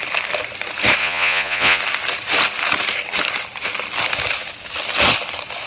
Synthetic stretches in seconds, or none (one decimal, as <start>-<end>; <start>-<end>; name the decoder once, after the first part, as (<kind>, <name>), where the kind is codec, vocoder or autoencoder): 1.0-1.8 (vocoder, Vocos)

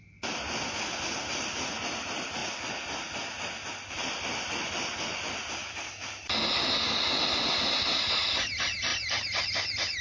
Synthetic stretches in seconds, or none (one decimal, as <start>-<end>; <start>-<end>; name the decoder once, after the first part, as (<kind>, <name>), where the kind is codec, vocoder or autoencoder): none

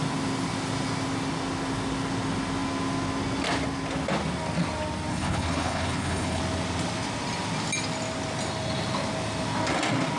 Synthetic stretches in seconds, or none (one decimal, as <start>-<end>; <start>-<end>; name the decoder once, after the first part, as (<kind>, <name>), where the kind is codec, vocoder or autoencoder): 5.1-6.4 (codec, HILCodec)

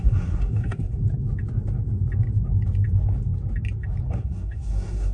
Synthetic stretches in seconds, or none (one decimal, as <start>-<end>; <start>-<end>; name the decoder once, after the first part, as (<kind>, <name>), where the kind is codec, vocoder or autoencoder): 0.0-1.0 (codec, SNAC); 4.1-5.1

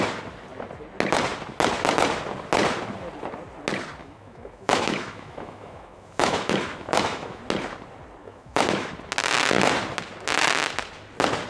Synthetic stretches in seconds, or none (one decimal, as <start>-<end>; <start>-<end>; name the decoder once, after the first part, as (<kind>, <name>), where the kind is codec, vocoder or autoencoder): 4.0-7.4 (autoencoder, DAC-VAE); 8.2-8.9